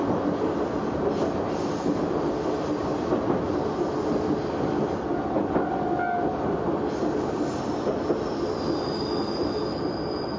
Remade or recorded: recorded